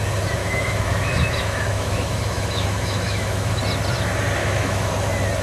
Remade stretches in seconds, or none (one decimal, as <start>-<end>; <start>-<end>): 0.4-3.6; 4.4-4.9